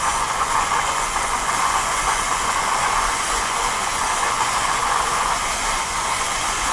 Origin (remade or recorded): remade